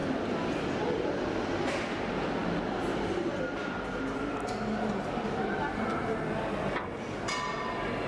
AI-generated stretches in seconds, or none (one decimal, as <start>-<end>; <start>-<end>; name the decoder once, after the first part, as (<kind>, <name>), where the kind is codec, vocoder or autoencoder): none